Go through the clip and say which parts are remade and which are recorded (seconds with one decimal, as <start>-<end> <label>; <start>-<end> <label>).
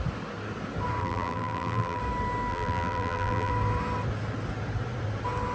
0.0-1.0 recorded; 1.0-2.0 remade; 2.0-2.5 recorded; 2.5-3.5 remade; 3.5-5.5 recorded